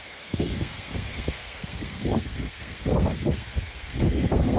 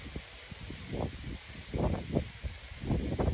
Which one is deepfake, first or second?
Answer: first